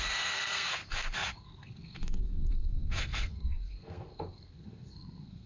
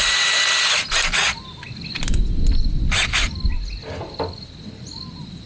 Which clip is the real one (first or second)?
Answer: second